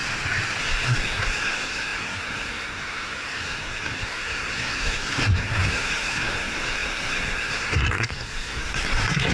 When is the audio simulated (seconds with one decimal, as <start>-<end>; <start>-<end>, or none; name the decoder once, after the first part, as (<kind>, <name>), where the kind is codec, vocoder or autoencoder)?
0.6-9.3 (codec, SNAC)